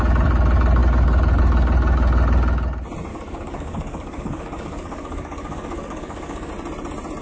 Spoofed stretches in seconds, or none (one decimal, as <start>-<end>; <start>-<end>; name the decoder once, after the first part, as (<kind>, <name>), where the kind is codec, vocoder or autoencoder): 3.1-6.5 (codec, DAC)